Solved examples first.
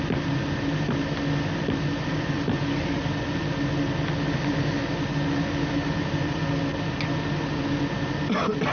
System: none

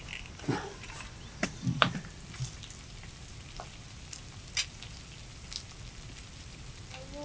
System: none